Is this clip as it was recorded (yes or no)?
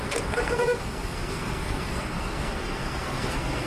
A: no